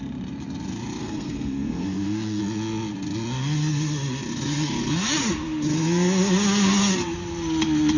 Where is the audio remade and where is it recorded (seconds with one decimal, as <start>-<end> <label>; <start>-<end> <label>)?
0.0-1.0 recorded; 1.0-2.4 remade; 2.4-8.0 recorded